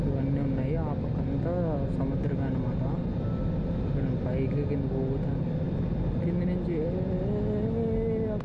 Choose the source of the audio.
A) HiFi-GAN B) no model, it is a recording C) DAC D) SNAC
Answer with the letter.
B